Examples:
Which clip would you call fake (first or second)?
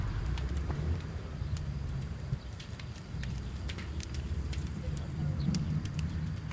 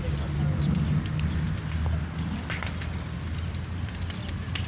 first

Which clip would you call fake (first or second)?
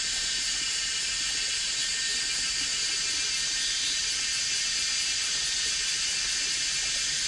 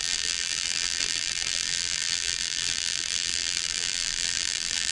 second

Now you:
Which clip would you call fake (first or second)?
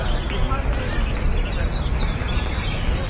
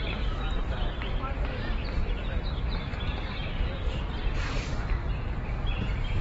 second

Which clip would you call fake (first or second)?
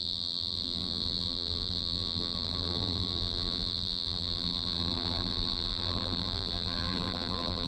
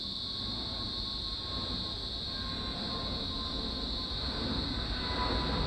first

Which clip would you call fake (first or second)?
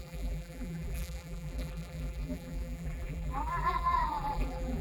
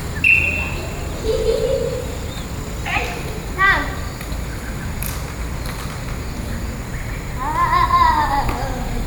first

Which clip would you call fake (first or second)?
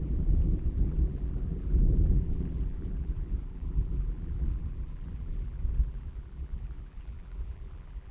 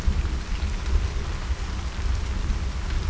first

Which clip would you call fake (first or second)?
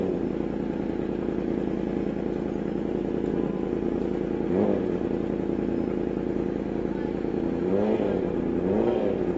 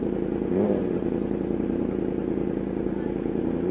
second